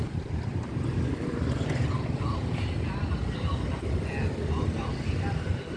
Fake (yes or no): no